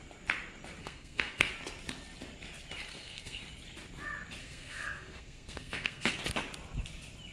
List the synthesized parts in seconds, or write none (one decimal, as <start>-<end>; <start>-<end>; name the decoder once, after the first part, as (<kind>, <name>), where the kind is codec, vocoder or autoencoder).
0.8-1.5 (codec, SNAC); 2.9-3.4; 4.4-6.1